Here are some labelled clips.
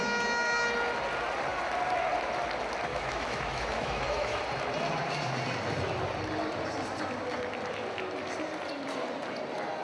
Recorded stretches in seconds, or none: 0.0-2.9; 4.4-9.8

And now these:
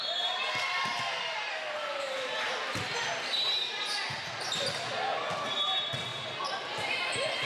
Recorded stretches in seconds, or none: 0.0-0.7; 4.4-7.5

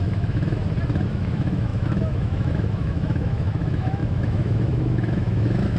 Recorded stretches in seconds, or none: 0.6-1.1

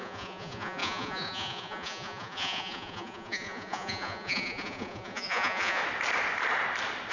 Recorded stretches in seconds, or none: 5.8-7.1

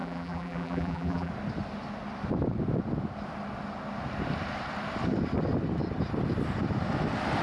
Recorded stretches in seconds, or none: 1.3-7.4

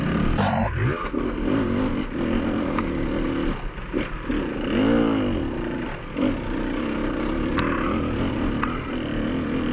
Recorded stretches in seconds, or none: 0.0-9.7

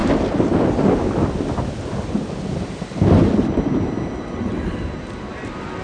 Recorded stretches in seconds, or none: 0.0-5.8

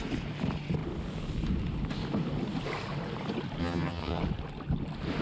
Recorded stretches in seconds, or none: 0.0-3.6; 4.2-5.2